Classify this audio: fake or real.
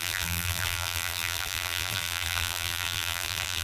fake